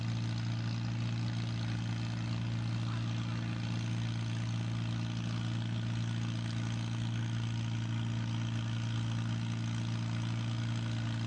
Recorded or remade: recorded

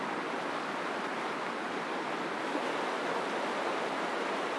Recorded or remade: recorded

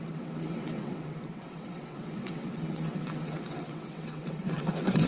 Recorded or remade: remade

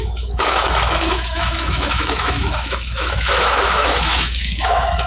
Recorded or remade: remade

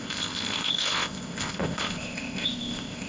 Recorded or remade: remade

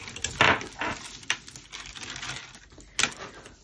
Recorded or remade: recorded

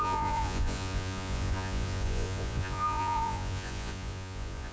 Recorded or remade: remade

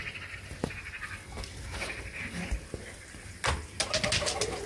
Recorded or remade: recorded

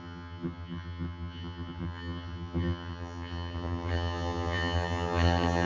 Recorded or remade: remade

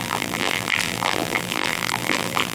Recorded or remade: remade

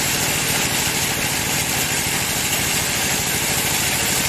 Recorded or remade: recorded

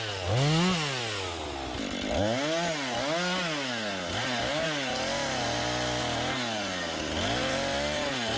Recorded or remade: recorded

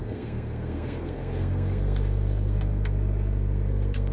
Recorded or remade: remade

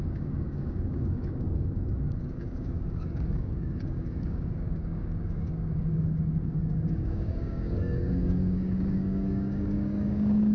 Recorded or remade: remade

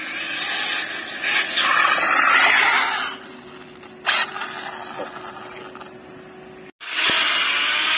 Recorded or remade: recorded